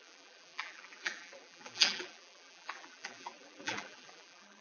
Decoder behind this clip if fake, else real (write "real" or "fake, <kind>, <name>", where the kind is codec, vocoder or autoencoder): fake, vocoder, BigVGAN v2